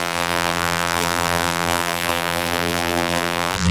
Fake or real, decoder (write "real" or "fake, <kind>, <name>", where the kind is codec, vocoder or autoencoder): fake, vocoder, BigVGAN v2